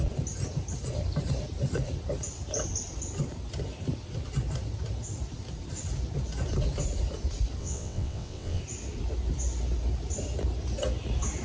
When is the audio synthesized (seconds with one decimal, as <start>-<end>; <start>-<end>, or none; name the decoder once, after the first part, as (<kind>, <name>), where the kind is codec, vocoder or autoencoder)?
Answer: 7.6-8.6 (vocoder, WaveNeXt)